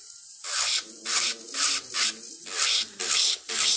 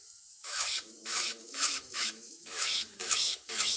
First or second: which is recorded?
first